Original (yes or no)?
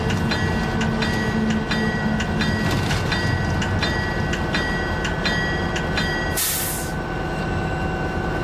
yes